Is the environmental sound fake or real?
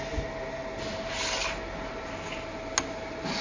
real